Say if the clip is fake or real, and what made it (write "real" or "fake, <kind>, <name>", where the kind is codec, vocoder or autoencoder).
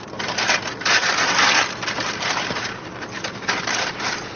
real